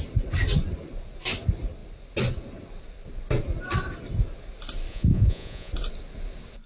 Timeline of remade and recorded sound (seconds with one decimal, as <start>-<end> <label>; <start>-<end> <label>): 0.0-4.9 recorded; 4.9-5.7 remade; 5.7-6.7 recorded